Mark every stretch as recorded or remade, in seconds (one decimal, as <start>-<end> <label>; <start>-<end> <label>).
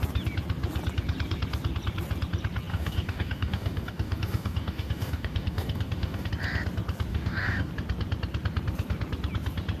0.0-2.7 recorded; 2.7-6.3 remade; 6.3-7.1 recorded; 7.1-7.7 remade; 7.7-9.8 recorded